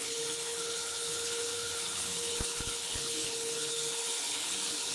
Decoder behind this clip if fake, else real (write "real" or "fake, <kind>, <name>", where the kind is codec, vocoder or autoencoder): fake, codec, HILCodec